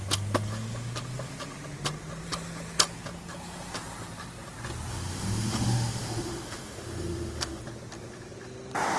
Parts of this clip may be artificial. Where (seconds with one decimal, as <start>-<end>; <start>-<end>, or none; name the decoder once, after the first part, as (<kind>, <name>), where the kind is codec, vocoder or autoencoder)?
4.9-7.6 (autoencoder, DAC-VAE)

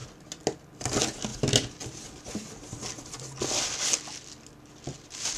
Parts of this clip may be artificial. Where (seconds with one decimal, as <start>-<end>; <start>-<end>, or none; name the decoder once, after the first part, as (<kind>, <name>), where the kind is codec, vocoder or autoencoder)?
none

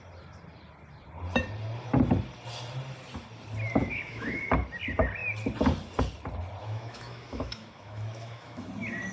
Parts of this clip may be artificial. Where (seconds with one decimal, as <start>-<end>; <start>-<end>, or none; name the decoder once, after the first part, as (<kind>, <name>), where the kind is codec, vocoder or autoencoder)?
3.8-4.4 (autoencoder, DAC-VAE); 6.6-8.7